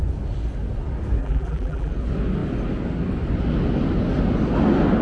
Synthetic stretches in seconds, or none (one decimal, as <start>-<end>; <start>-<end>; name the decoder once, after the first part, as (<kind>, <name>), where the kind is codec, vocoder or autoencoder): 1.2-1.9 (vocoder, BigVGAN v2)

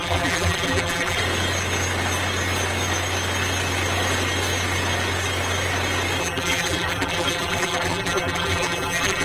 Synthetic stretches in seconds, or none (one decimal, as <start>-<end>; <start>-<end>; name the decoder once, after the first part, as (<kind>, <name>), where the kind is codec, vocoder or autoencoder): 0.0-1.2 (vocoder, BigVGAN v2); 6.2-9.2

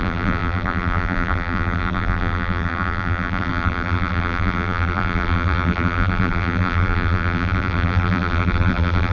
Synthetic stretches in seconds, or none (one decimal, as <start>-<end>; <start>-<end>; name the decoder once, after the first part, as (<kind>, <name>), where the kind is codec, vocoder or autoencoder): 0.0-9.1 (vocoder, BigVGAN v2)

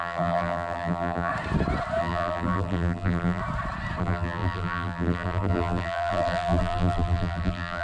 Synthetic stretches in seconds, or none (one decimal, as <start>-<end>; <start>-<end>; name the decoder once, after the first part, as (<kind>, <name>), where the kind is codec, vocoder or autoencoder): 0.0-1.3 (vocoder, BigVGAN v2); 2.0-3.4; 4.0-7.8

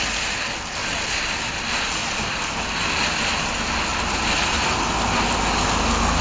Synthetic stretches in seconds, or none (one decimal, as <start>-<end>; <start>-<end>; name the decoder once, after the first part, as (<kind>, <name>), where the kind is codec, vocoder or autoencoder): none

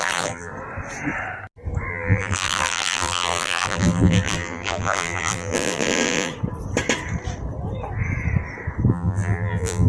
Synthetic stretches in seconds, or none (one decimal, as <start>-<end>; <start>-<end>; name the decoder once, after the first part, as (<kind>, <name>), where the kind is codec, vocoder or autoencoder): 0.0-0.5 (vocoder, BigVGAN v2); 1.9-6.3; 8.9-9.9

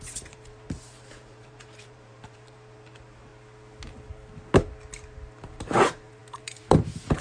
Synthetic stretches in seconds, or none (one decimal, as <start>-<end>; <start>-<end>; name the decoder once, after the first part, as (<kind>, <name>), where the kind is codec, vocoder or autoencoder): 0.0-3.3 (vocoder, BigVGAN v2); 5.6-7.2

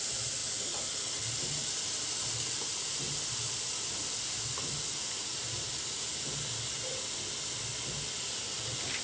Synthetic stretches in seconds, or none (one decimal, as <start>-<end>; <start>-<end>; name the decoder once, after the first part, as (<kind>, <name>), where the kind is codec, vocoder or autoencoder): 0.0-9.0 (vocoder, BigVGAN v2)